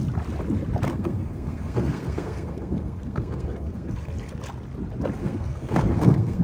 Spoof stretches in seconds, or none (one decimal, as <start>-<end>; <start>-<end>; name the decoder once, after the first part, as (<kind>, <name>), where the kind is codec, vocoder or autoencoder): 0.9-4.1 (codec, SNAC); 5.2-6.4